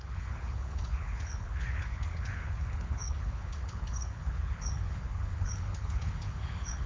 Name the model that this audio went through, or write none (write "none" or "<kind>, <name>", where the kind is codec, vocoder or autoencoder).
codec, HILCodec